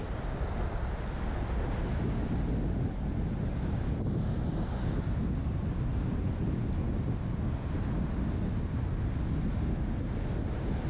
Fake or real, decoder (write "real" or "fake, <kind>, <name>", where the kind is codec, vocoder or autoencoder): real